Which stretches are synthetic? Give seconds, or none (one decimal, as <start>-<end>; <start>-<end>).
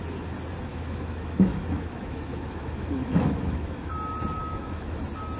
0.7-3.9; 4.4-5.0